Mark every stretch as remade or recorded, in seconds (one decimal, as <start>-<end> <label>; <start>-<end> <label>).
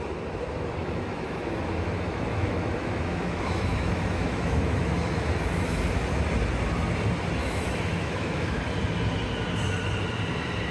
0.0-0.8 recorded; 0.8-5.8 remade; 5.8-7.4 recorded; 7.4-8.6 remade; 8.6-10.7 recorded